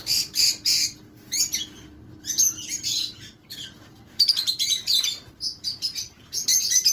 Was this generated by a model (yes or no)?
yes